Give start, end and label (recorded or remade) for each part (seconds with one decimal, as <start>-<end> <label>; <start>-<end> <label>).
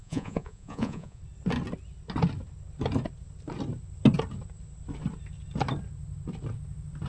0.0-1.2 remade; 1.2-7.1 recorded